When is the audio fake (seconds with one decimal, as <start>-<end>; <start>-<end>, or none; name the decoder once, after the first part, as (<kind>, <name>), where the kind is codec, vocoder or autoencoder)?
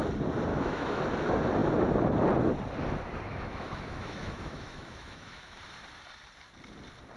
0.5-1.0 (autoencoder, DAC-VAE); 3.3-5.6